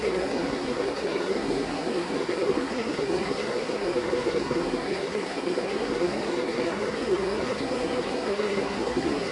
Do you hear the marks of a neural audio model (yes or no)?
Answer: yes